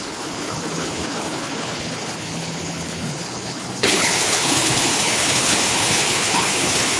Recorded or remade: remade